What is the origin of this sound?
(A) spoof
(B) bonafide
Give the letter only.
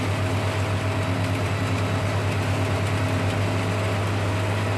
B